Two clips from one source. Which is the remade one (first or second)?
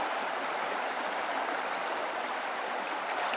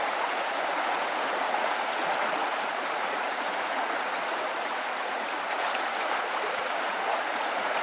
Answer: second